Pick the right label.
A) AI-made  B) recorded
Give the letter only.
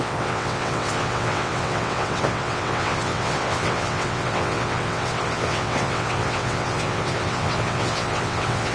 A